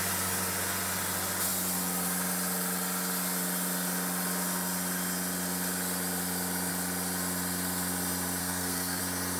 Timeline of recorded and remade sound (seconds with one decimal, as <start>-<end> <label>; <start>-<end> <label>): 0.0-8.4 recorded; 8.4-9.0 remade; 9.0-9.4 recorded